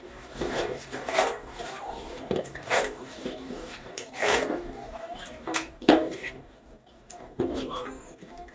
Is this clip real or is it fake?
fake